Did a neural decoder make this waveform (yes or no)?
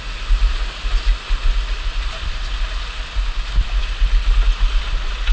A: no